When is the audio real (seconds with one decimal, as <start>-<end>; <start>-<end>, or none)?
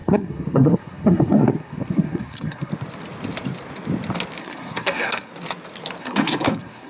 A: 2.7-4.4; 5.3-6.0